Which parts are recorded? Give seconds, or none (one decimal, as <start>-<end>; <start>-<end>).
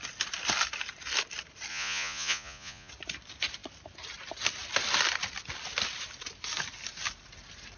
0.0-1.7; 2.9-7.8